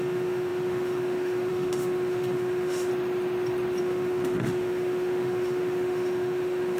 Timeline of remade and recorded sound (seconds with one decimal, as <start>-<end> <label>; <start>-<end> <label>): 0.0-2.9 remade; 2.9-3.8 recorded; 3.8-6.8 remade